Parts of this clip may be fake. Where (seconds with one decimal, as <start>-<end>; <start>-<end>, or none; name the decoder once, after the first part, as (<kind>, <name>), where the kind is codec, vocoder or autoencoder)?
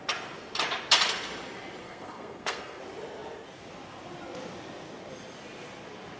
1.8-2.8 (codec, SNAC)